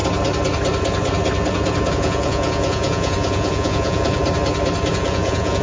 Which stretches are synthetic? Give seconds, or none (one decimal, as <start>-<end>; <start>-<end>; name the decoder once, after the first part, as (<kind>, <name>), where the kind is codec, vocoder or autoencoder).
1.9-4.2 (vocoder, Vocos); 4.9-5.6